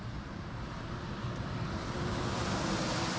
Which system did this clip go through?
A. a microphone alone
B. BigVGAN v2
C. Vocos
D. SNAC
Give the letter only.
A